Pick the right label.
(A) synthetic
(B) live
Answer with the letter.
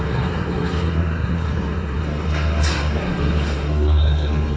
A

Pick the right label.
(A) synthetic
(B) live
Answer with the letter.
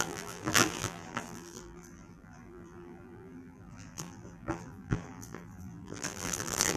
A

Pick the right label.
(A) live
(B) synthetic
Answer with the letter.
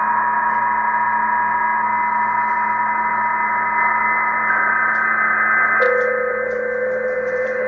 A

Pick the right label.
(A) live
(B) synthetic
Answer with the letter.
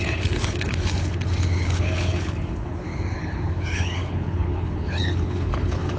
B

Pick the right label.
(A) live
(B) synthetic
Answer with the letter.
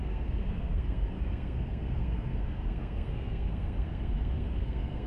B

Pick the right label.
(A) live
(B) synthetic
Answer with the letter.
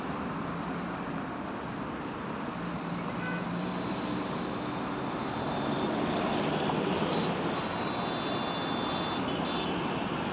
A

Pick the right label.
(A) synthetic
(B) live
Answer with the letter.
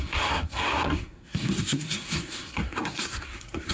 A